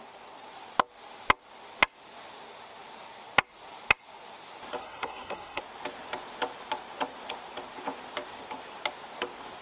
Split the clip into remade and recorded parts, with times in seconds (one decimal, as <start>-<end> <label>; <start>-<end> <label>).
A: 0.0-4.8 recorded; 4.8-5.6 remade; 5.6-9.6 recorded

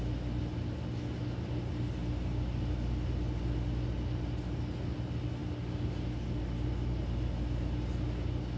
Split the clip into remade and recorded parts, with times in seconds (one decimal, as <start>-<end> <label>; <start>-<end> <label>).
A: 0.0-8.6 recorded

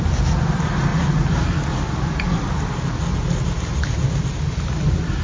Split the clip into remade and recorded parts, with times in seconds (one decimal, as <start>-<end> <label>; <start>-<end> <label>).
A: 0.0-5.2 recorded

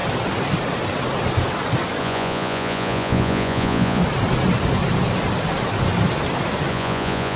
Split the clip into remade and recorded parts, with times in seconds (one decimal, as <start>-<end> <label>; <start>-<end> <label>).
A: 0.0-2.0 recorded; 2.0-4.0 remade; 4.0-6.7 recorded; 6.7-7.4 remade

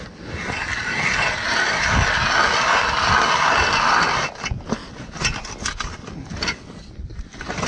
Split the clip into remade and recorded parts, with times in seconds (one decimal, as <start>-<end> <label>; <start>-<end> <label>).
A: 0.0-0.7 recorded; 0.7-2.2 remade; 2.2-7.7 recorded

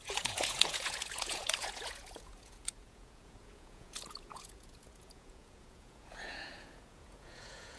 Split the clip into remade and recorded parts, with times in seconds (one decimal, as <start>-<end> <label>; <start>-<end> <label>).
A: 0.0-7.8 remade

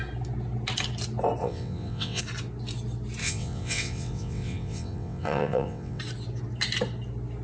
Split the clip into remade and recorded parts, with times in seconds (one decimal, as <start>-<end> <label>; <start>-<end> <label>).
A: 0.0-1.4 recorded; 1.4-2.2 remade; 2.2-3.2 recorded; 3.2-6.0 remade; 6.0-7.4 recorded